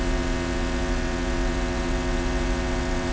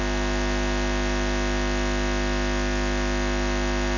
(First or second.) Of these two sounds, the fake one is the first